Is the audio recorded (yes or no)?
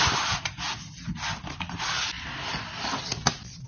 yes